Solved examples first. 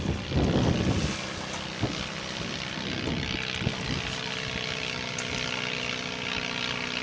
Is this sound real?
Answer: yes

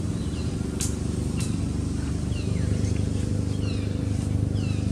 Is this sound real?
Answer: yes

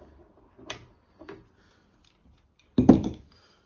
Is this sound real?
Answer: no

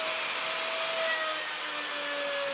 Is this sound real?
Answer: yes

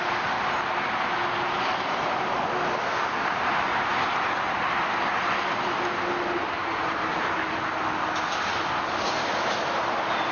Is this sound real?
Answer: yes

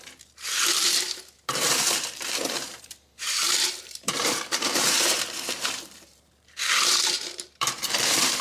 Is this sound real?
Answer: no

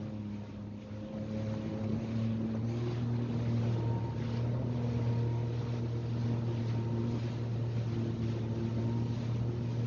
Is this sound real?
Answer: yes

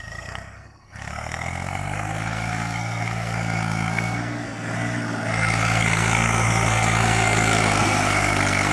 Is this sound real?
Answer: no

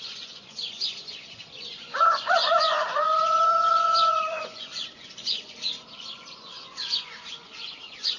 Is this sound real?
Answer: no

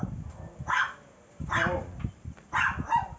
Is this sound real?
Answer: yes